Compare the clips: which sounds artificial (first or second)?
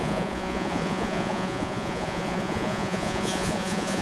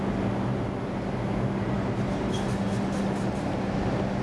first